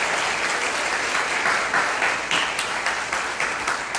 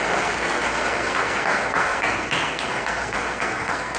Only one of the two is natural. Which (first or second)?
first